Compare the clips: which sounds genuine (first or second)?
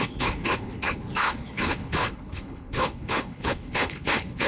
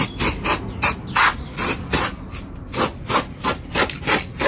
second